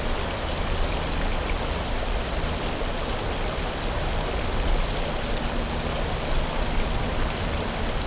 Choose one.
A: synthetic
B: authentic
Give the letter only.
B